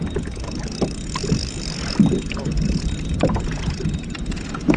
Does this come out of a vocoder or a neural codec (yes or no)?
no